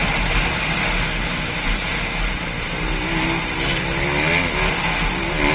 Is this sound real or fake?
real